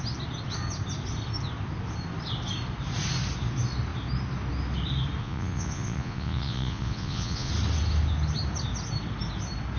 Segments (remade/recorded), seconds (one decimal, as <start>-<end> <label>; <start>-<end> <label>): 0.0-5.2 recorded; 5.2-7.5 remade; 7.5-9.8 recorded